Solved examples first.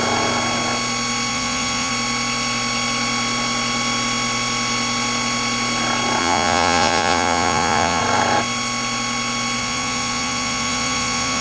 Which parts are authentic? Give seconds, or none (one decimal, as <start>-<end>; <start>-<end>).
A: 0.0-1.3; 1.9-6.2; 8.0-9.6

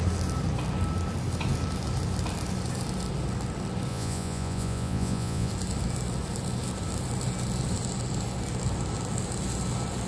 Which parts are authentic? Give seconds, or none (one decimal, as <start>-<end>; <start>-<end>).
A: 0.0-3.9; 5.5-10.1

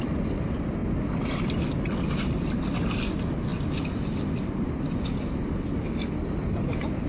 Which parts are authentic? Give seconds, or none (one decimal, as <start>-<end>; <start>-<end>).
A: 0.0-7.1

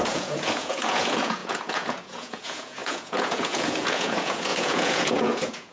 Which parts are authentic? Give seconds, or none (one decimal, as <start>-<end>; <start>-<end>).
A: none

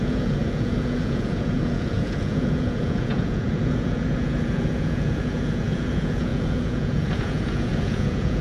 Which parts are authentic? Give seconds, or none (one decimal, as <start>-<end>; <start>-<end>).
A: none